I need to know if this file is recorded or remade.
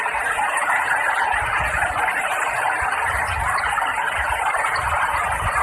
recorded